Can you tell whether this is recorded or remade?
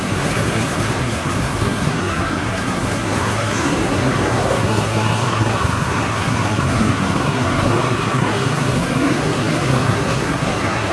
remade